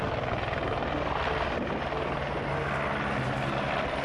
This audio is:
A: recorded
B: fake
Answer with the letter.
A